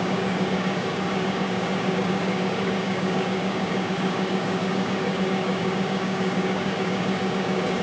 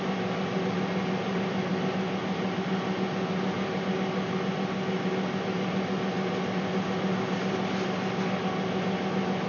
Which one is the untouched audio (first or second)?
second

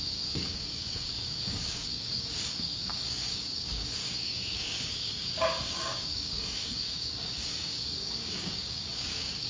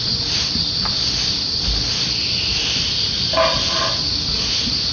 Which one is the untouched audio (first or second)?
second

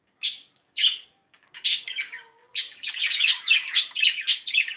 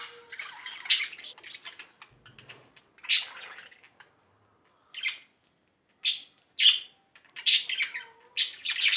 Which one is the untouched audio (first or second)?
second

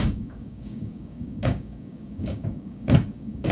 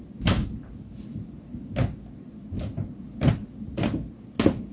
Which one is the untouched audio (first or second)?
second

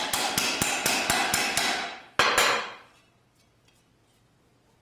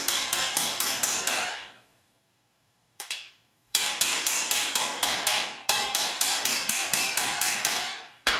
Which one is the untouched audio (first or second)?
first